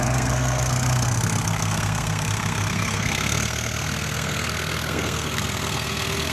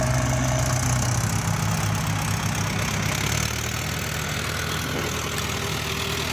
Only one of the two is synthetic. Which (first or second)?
first